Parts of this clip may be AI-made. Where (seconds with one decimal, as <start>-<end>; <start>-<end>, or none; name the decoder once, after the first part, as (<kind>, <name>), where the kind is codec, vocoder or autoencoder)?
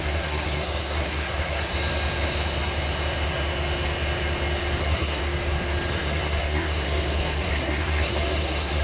0.0-1.7 (codec, SNAC); 4.8-5.2; 5.9-8.8